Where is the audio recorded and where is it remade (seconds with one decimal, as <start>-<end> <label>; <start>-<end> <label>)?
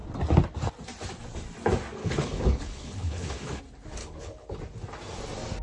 0.0-2.0 recorded; 2.0-3.6 remade; 3.6-4.0 recorded; 4.0-4.6 remade; 4.6-5.6 recorded